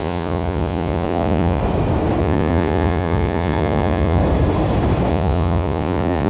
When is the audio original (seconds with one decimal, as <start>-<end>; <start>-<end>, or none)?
1.6-2.2; 4.2-5.1